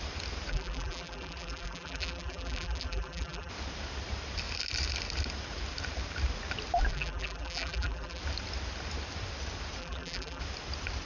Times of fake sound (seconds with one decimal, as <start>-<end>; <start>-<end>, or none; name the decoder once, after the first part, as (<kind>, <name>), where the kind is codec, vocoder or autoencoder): 0.5-3.5 (vocoder, BigVGAN v2); 6.9-8.2; 9.8-10.4